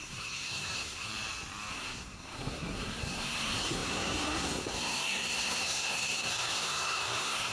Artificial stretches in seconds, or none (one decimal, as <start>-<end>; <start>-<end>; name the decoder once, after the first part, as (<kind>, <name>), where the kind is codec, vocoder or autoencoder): 0.0-1.1 (codec, SNAC); 1.7-7.5